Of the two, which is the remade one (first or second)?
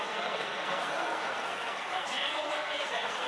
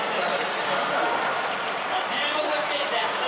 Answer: first